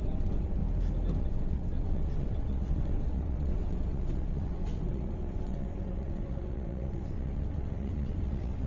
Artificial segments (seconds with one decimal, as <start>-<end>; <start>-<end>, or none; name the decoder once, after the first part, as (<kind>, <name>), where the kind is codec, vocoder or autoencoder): 0.0-0.6 (vocoder, WaveNeXt); 1.2-8.7